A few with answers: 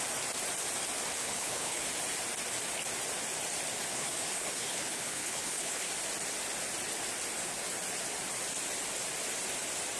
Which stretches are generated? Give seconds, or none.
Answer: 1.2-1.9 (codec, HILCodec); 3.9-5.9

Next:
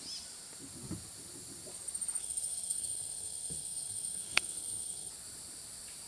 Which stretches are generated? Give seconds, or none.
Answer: 2.2-5.1 (codec, SNAC)

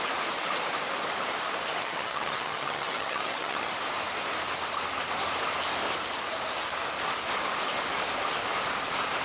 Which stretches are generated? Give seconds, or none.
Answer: 1.8-3.7 (vocoder, HiFi-GAN)